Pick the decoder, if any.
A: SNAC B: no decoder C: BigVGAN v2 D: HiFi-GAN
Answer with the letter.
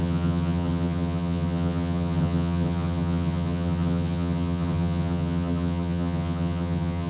D